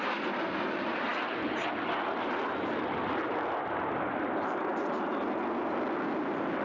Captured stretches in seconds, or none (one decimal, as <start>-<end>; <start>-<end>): 0.0-6.6